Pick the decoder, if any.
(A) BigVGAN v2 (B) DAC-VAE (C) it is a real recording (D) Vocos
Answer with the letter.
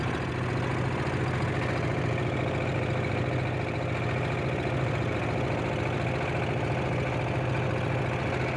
C